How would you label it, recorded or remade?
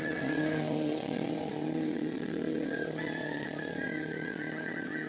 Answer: remade